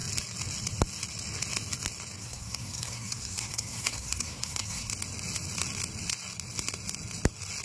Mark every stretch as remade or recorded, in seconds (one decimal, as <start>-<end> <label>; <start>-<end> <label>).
0.0-2.2 recorded; 2.2-4.9 remade; 4.9-7.6 recorded

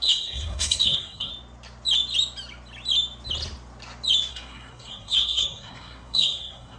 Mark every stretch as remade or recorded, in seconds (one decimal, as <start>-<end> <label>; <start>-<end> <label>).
0.0-1.3 remade; 1.3-4.3 recorded; 4.3-6.8 remade